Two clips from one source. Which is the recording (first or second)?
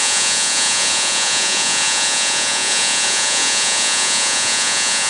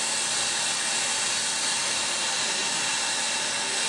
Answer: second